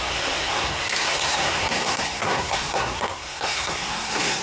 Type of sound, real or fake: fake